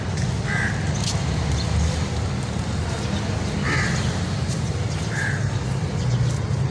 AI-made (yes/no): no